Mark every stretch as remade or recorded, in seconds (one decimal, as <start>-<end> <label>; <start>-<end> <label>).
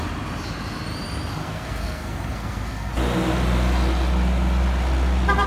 0.0-1.4 recorded; 1.4-2.9 remade; 2.9-5.5 recorded